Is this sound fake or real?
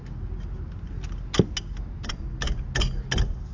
real